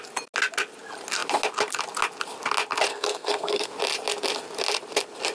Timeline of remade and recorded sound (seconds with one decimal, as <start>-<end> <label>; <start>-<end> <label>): 0.0-2.9 recorded; 2.9-3.7 remade; 3.7-5.3 recorded